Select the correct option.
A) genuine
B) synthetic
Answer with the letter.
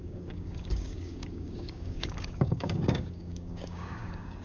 B